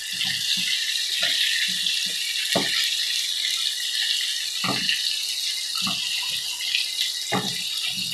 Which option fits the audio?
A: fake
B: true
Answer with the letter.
B